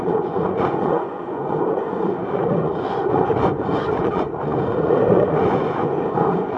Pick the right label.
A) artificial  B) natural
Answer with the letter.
A